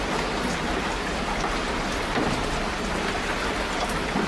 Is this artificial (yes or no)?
no